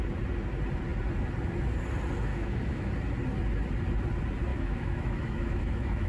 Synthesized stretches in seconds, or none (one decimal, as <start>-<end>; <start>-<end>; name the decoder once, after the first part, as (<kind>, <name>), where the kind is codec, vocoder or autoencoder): 2.3-2.9 (autoencoder, DAC-VAE); 4.5-6.1